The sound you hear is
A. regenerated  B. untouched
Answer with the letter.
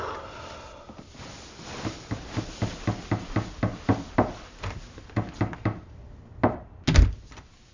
B